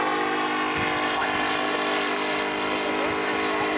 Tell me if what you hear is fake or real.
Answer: real